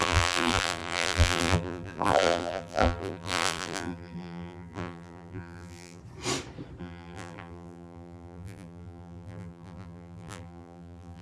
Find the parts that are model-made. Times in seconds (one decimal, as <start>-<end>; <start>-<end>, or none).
0.0-6.0; 6.8-11.2